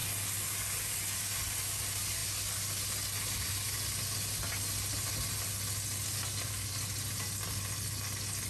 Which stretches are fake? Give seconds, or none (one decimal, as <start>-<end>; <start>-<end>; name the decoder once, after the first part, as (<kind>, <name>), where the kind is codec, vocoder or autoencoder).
none